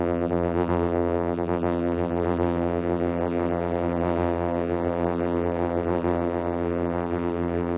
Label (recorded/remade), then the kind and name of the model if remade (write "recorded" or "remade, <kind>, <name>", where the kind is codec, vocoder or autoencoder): remade, vocoder, BigVGAN v2